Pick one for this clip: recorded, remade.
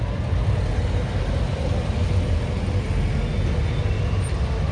recorded